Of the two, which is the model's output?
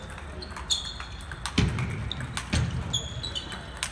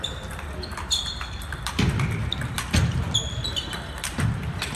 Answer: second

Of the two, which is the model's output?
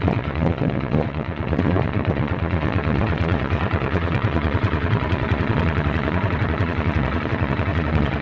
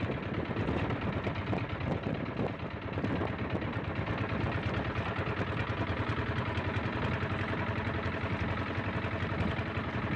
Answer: first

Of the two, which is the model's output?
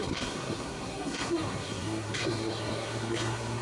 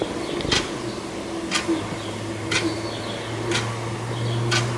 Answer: first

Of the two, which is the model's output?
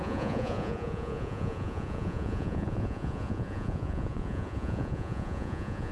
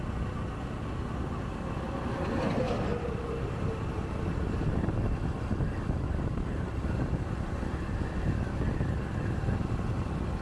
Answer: first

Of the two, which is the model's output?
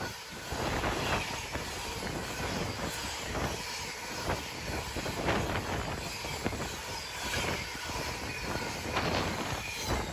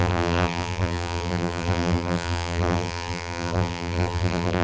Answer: second